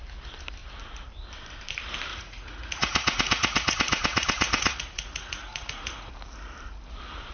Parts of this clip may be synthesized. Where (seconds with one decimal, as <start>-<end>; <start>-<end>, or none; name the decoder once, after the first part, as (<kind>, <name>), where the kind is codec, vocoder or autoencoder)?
2.1-6.1 (vocoder, Vocos)